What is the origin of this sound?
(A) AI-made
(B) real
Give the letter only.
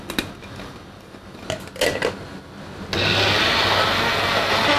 B